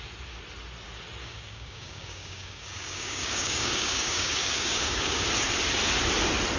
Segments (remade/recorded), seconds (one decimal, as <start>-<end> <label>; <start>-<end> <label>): 0.0-1.2 recorded; 1.2-5.2 remade; 5.2-6.6 recorded